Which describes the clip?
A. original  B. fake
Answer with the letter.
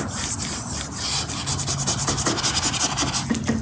A